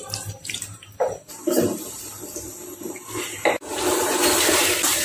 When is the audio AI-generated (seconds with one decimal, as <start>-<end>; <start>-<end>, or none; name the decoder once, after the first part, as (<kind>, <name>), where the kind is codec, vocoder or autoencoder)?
0.0-2.1 (vocoder, BigVGAN v2); 2.9-5.0